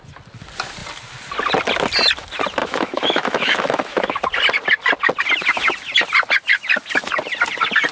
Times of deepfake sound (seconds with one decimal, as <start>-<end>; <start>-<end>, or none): 2.6-4.2